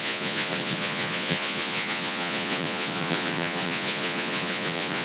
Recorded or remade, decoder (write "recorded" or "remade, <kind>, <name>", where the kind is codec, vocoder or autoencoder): remade, vocoder, Vocos